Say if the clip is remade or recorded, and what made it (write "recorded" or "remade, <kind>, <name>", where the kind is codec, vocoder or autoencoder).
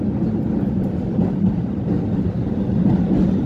recorded